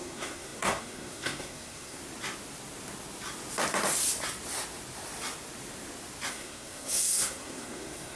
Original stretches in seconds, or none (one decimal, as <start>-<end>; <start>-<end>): 2.0-6.3

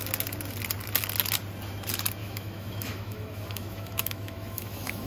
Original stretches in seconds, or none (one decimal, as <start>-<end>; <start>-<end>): 0.0-2.2

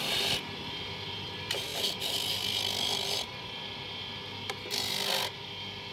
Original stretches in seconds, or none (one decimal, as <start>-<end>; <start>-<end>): 0.0-5.9

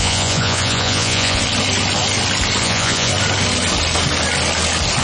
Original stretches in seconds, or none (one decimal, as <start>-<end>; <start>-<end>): 1.4-2.6; 3.1-5.0

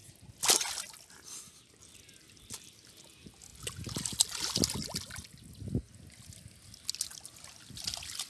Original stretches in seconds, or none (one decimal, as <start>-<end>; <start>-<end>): 0.0-8.3